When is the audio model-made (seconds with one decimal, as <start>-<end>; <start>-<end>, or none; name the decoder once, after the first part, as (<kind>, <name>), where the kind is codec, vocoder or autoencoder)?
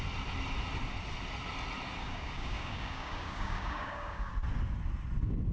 2.0-4.3 (codec, DAC)